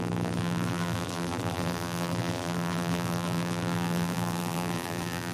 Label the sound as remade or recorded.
remade